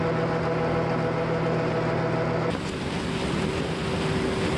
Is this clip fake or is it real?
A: real